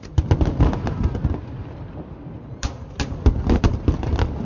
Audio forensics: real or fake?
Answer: real